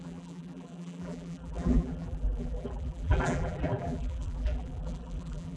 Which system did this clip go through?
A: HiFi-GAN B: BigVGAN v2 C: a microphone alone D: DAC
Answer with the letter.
B